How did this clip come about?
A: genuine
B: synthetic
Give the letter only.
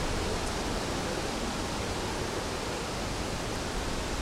A